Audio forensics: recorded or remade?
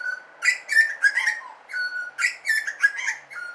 recorded